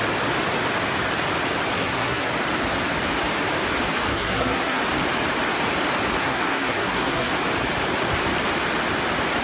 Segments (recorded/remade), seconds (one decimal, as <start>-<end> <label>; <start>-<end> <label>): 0.0-1.7 recorded; 1.7-2.3 remade; 2.3-4.1 recorded; 4.1-4.8 remade; 4.8-6.2 recorded; 6.2-7.3 remade; 7.3-9.4 recorded